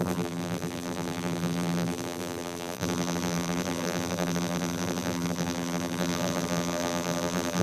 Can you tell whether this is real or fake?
fake